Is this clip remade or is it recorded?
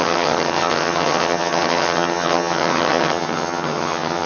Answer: remade